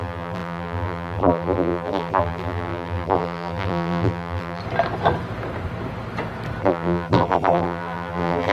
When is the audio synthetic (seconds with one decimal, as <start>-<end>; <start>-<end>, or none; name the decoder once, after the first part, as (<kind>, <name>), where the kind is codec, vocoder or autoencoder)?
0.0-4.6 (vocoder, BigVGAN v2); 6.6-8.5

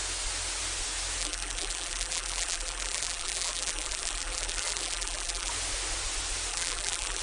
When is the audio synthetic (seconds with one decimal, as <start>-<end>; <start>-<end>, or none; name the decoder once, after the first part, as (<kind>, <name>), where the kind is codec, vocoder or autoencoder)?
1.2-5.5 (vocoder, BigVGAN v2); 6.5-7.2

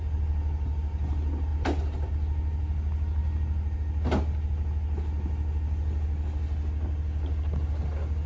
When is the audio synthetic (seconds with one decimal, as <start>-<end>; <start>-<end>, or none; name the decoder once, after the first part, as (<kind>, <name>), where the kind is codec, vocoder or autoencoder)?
1.5-2.1 (vocoder, BigVGAN v2)